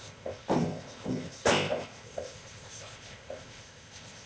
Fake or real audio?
fake